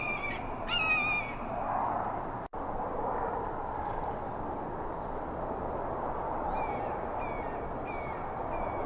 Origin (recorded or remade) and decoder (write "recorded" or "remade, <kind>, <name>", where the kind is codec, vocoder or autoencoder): recorded